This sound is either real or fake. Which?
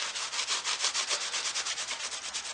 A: real